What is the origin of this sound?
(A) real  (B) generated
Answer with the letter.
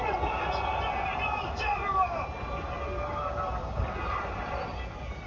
A